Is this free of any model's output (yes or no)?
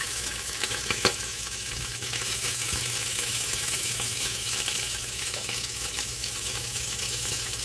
no